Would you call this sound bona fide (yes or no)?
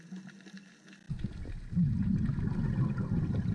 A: yes